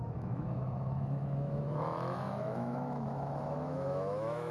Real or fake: fake